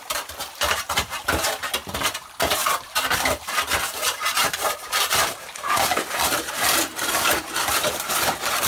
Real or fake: fake